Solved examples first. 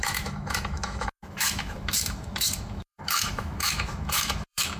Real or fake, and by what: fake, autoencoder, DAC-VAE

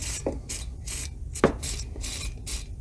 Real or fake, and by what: real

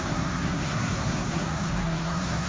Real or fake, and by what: fake, codec, SNAC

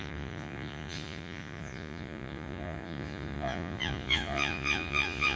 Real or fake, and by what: fake, vocoder, Vocos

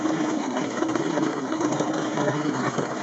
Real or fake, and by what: fake, codec, SNAC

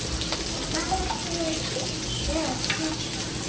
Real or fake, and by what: real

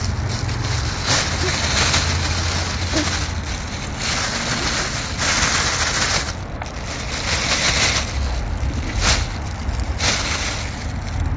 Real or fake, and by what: real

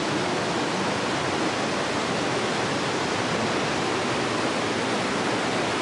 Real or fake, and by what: real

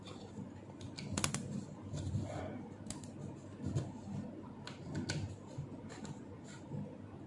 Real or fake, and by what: real